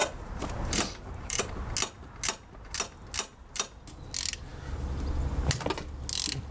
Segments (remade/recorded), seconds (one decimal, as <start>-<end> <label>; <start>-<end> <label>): 0.0-1.5 remade; 1.5-6.5 recorded